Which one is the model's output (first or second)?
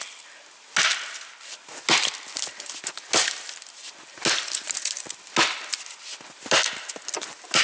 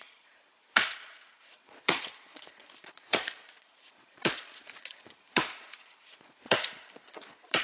second